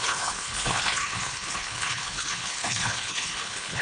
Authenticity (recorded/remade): remade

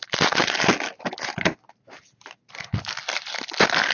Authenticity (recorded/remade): recorded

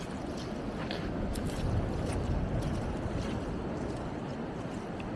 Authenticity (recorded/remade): recorded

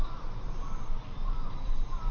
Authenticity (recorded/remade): recorded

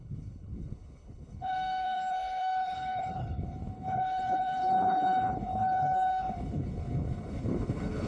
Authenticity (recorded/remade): remade